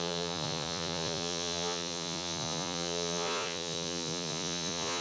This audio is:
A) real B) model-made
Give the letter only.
B